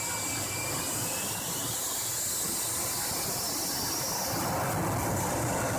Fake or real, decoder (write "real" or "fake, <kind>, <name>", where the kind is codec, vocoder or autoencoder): real